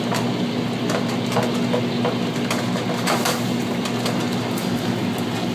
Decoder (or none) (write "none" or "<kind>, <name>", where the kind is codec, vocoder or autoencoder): none